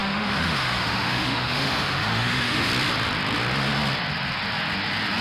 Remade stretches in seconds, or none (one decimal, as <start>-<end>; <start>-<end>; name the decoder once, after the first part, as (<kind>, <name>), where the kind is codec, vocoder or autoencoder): 0.0-2.7 (autoencoder, DAC-VAE)